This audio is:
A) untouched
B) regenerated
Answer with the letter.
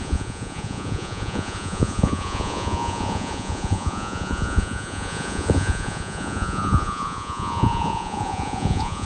B